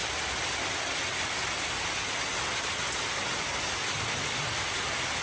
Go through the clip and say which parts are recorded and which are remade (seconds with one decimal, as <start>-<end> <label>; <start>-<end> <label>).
0.0-5.2 recorded